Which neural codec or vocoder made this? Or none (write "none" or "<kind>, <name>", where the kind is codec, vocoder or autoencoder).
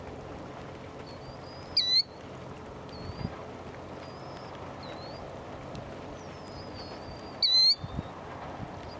none